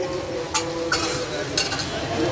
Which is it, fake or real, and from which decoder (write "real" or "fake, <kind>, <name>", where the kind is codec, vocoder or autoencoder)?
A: real